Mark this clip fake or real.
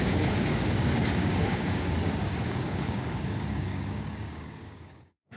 fake